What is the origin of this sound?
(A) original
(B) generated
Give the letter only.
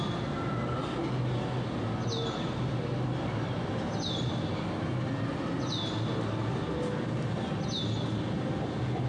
A